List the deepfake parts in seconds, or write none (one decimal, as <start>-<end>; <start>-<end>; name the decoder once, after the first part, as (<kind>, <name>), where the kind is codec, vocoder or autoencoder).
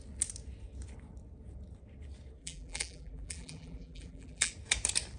2.4-4.5 (vocoder, BigVGAN v2)